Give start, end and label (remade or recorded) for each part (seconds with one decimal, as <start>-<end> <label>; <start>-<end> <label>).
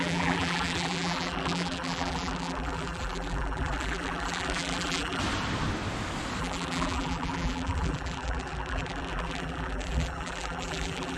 0.0-5.2 remade; 5.2-6.4 recorded; 6.4-11.2 remade